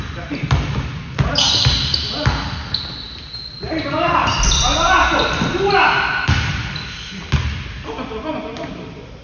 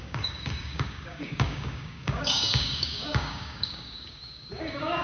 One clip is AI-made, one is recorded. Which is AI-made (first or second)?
second